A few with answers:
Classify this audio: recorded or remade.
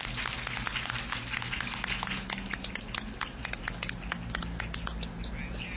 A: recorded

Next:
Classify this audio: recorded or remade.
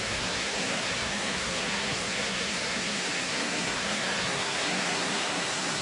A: remade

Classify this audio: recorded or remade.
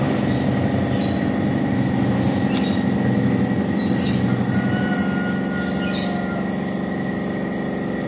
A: recorded